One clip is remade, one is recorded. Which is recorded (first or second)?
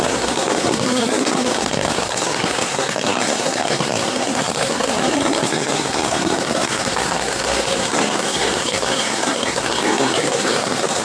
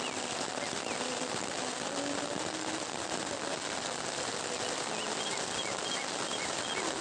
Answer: second